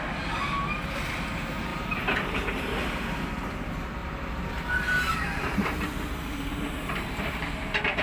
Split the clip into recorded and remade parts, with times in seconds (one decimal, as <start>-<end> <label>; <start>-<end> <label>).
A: 0.0-1.7 recorded; 1.7-2.6 remade; 2.6-4.0 recorded; 4.0-7.5 remade; 7.5-8.0 recorded